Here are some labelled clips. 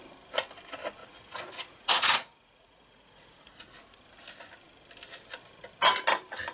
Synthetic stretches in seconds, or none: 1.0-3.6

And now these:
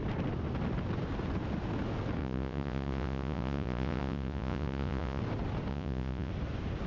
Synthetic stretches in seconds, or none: 2.2-5.2; 5.7-6.3